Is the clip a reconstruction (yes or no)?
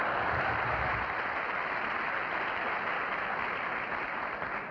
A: no